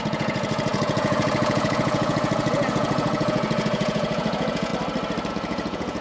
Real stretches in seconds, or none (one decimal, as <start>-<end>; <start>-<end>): 4.7-5.3